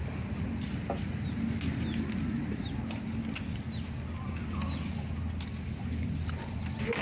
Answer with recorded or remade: recorded